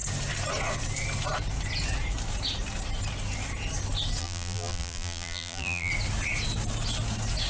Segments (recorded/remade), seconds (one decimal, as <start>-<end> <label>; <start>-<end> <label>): 0.0-4.2 recorded; 4.2-5.9 remade; 5.9-7.5 recorded